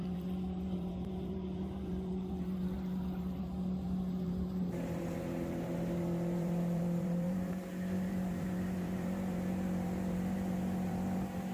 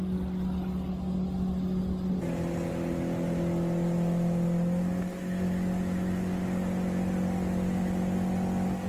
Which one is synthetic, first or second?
first